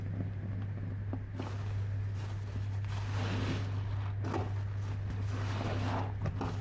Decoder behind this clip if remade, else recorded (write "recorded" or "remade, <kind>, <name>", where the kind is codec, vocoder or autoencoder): recorded